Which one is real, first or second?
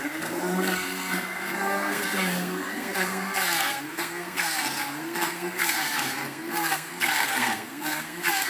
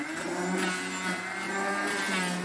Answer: second